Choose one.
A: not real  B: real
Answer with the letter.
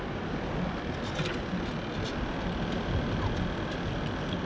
B